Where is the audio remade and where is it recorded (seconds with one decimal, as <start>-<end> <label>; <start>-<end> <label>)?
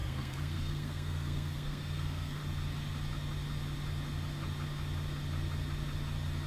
0.0-2.4 remade; 2.4-6.5 recorded